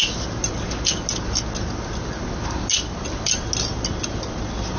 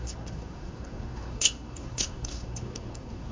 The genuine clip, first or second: first